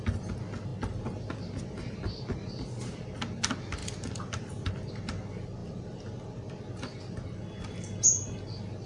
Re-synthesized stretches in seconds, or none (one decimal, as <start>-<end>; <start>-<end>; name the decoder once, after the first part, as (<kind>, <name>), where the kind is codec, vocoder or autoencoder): 3.8-4.9 (vocoder, BigVGAN v2); 5.6-6.6